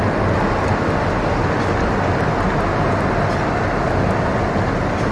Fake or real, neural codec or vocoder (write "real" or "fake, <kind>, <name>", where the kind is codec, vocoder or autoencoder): real